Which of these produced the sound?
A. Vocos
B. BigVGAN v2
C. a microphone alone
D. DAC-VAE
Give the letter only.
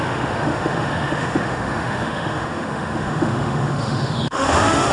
D